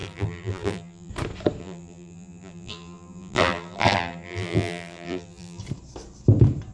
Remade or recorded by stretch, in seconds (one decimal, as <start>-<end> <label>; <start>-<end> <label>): 0.0-1.1 remade; 1.1-1.6 recorded; 1.6-5.6 remade; 5.6-6.7 recorded